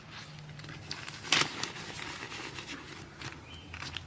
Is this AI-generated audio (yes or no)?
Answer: no